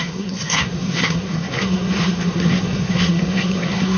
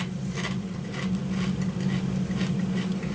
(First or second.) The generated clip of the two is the first